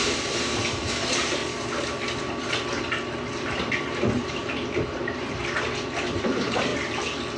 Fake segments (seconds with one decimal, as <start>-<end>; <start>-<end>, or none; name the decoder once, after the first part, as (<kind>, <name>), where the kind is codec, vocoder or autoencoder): 0.0-1.4 (vocoder, BigVGAN v2); 4.1-5.4; 6.2-6.7